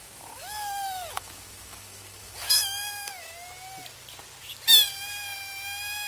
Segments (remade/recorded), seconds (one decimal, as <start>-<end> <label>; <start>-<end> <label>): 0.0-3.1 remade; 3.1-6.1 recorded